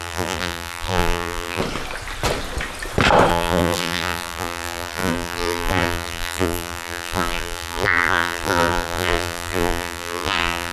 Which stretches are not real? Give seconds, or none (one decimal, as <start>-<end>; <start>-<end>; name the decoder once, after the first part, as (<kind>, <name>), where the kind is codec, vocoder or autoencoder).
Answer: 0.0-1.6 (vocoder, BigVGAN v2); 3.3-10.7